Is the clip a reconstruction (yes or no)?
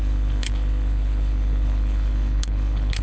yes